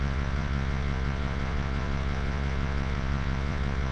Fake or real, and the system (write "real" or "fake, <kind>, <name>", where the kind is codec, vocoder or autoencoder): fake, vocoder, Vocos